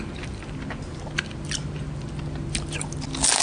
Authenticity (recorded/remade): recorded